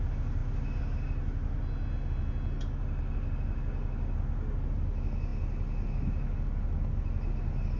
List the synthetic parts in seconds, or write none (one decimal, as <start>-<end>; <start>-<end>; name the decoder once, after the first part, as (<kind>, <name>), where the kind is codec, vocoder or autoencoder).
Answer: none